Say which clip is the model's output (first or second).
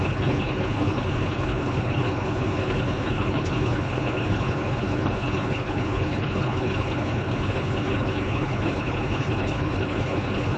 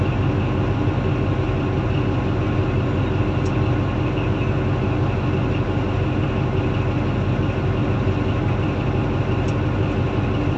first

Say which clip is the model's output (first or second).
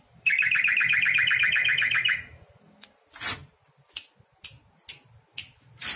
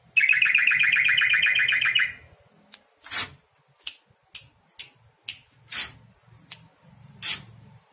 first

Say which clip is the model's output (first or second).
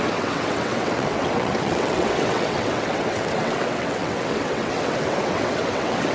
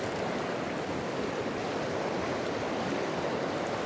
first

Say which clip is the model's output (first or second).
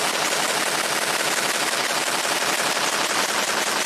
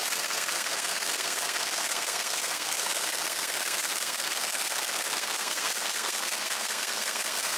second